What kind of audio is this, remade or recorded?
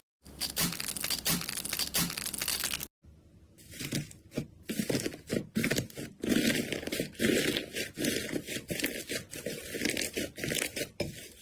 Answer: recorded